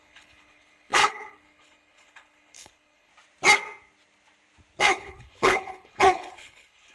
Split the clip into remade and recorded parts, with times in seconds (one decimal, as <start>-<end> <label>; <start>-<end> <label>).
0.0-3.1 remade; 3.1-4.8 recorded; 4.8-6.9 remade